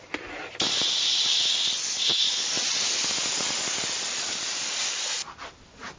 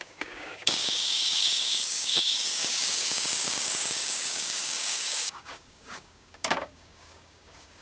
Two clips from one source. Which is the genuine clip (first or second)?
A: first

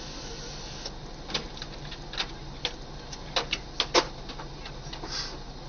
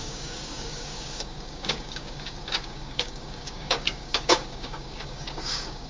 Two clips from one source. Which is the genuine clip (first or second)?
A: first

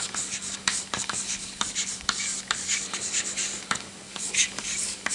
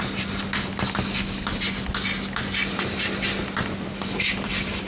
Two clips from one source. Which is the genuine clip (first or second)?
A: second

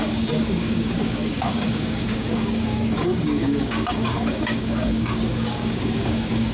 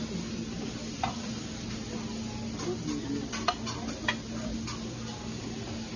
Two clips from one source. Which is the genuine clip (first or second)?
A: second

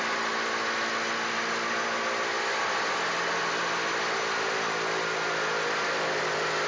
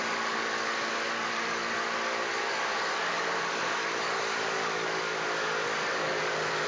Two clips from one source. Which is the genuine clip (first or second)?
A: first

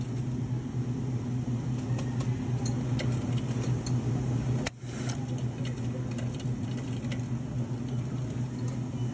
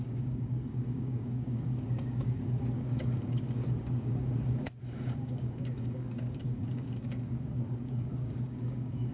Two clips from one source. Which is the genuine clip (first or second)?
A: first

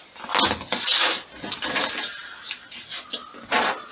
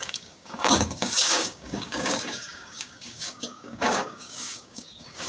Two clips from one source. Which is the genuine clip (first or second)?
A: first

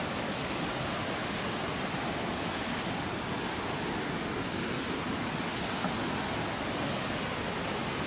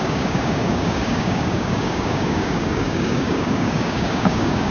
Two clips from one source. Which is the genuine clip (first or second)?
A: first